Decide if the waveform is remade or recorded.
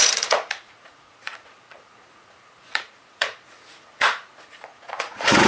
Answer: remade